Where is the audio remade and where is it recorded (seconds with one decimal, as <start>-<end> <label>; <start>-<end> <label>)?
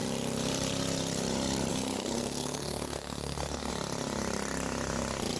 0.0-1.7 recorded; 1.7-3.7 remade; 3.7-5.4 recorded